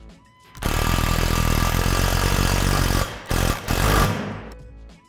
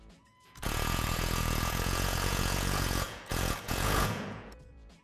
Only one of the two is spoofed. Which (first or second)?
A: second